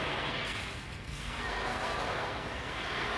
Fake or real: fake